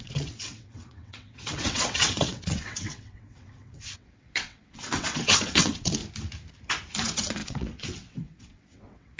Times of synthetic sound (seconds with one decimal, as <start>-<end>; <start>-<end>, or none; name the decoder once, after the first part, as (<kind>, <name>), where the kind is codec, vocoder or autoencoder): 0.0-6.0 (vocoder, WaveNeXt); 7.0-9.2